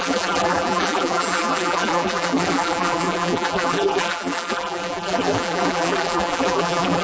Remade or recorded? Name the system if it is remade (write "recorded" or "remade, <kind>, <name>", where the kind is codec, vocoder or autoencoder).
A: remade, vocoder, BigVGAN v2